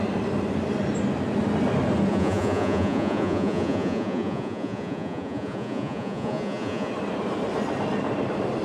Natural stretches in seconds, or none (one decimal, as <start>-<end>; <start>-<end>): 0.0-2.1; 6.9-8.6